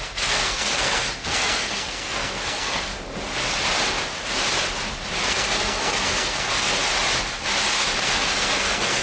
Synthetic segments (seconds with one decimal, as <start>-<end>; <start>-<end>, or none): 0.0-2.9; 5.2-6.7; 8.0-9.0